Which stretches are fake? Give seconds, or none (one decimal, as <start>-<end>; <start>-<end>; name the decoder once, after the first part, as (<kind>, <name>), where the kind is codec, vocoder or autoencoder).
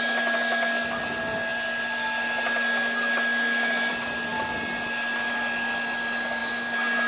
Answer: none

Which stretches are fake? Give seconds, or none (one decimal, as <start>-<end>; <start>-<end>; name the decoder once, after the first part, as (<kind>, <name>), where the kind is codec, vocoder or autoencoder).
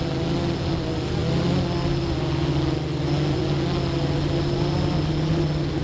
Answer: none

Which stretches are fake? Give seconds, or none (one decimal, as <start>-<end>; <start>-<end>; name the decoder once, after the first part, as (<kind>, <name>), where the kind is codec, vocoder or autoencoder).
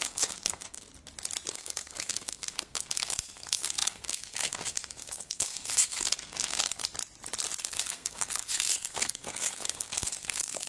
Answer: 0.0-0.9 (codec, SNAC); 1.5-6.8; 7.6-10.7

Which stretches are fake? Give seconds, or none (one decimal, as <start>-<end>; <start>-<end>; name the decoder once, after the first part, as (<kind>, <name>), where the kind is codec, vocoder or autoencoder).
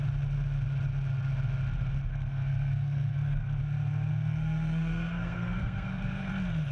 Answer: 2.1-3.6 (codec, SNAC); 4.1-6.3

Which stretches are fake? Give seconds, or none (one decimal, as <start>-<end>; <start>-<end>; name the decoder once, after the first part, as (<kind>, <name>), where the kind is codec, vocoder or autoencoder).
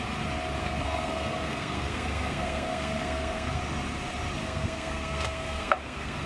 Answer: 0.6-3.6 (codec, SNAC); 4.4-6.3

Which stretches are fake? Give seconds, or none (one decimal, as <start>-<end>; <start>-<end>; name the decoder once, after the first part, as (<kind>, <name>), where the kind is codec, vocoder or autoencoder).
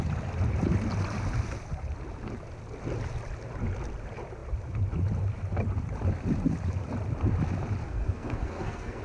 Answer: 7.8-9.0 (codec, SNAC)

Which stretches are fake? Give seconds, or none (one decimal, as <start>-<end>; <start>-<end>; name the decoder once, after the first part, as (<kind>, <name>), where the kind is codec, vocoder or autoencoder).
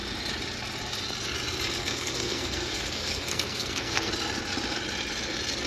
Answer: 1.8-4.1 (codec, SNAC)